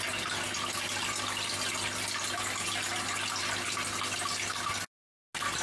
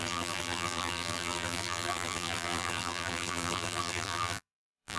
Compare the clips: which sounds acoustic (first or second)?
first